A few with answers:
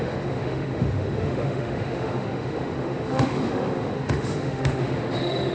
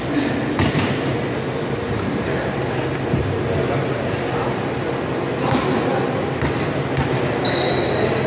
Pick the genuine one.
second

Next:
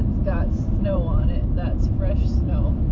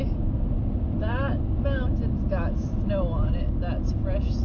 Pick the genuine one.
second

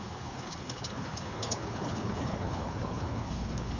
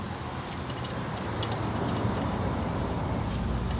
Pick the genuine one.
second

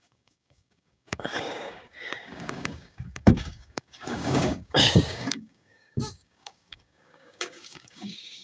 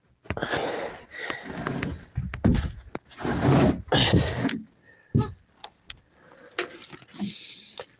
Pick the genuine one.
second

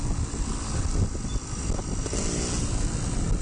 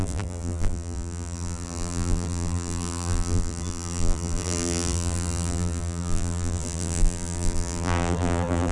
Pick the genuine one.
first